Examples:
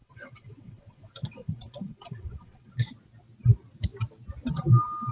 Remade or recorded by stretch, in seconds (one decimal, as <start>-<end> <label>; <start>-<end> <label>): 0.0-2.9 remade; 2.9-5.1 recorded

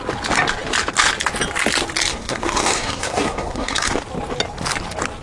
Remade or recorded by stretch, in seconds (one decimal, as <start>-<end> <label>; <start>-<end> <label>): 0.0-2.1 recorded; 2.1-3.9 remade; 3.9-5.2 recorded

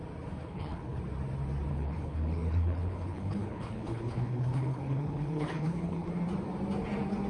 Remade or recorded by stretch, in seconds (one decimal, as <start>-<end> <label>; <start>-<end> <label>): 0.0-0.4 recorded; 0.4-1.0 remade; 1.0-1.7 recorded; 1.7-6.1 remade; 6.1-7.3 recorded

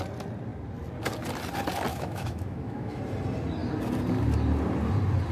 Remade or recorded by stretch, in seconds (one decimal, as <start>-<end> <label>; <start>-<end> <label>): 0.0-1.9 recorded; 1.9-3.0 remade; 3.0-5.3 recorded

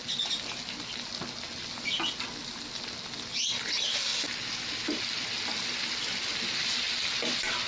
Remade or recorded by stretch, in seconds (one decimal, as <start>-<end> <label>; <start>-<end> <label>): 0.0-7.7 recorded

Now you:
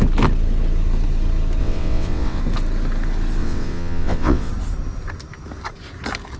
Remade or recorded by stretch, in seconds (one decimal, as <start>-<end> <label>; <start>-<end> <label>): 0.0-1.6 recorded; 1.6-2.4 remade; 2.4-3.4 recorded; 3.4-4.5 remade; 4.5-6.4 recorded

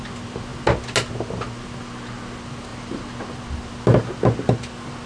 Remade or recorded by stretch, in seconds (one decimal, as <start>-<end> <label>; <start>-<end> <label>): 0.0-5.1 recorded